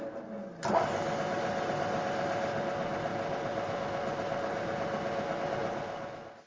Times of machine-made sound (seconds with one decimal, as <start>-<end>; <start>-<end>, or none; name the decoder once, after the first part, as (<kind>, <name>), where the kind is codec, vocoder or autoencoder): none